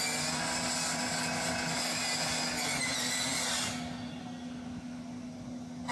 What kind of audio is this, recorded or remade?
recorded